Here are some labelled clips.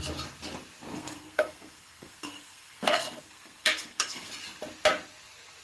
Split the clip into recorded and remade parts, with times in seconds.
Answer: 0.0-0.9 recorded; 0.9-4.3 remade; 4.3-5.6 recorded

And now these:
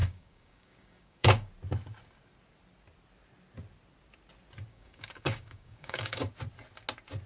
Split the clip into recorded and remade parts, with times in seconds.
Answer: 0.0-1.5 remade; 1.5-4.7 recorded; 4.7-6.3 remade; 6.3-7.3 recorded

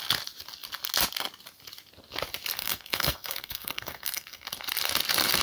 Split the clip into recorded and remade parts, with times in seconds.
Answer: 0.0-2.6 recorded; 2.6-4.5 remade; 4.5-5.4 recorded

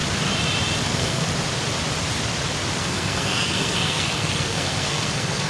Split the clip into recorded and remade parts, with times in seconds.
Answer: 0.0-0.9 recorded; 0.9-1.3 remade; 1.3-2.8 recorded; 2.8-5.5 remade

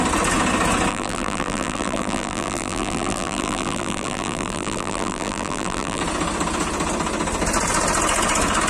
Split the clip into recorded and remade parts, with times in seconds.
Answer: 0.0-0.9 recorded; 0.9-6.0 remade; 6.0-8.7 recorded

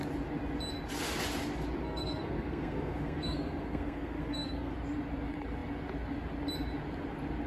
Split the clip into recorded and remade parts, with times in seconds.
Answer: 0.0-1.8 recorded; 1.8-4.7 remade; 4.7-7.5 recorded

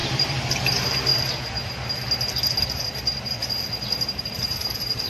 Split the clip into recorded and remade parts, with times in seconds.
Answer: 0.0-1.1 remade; 1.1-4.1 recorded; 4.1-5.1 remade

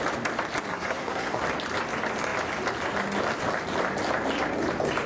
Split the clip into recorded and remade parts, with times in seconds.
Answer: 0.0-0.7 recorded; 0.7-1.4 remade; 1.4-5.1 recorded